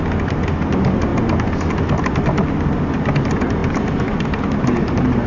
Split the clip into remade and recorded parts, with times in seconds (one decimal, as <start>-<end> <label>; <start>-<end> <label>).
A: 0.0-5.3 recorded